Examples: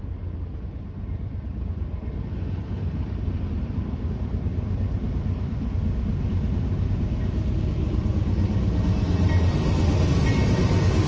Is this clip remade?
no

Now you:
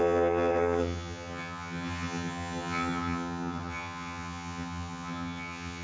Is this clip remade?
yes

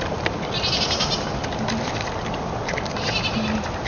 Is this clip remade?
no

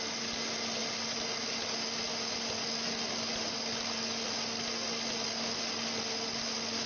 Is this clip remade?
no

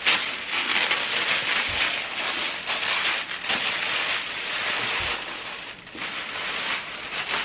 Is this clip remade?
no